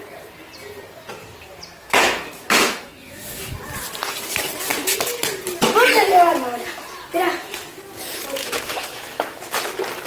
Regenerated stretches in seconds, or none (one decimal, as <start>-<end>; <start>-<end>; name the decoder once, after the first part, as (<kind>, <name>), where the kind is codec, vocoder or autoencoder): 1.8-3.6 (autoencoder, DAC-VAE); 8.4-9.4